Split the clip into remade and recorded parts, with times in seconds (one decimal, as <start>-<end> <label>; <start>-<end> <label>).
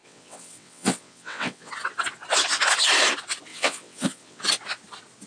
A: 0.0-1.7 remade; 1.7-3.5 recorded; 3.5-4.4 remade; 4.4-5.3 recorded